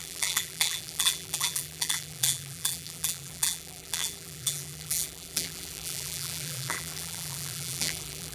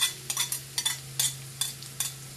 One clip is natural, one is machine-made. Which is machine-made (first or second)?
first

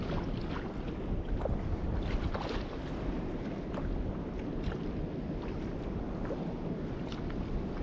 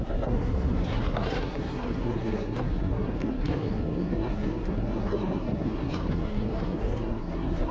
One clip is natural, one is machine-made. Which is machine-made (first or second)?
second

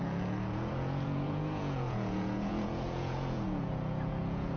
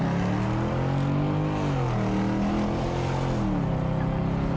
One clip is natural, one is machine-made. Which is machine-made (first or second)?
first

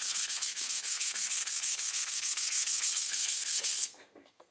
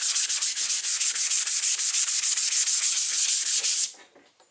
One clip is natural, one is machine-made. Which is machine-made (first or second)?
first